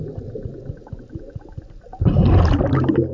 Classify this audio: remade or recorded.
recorded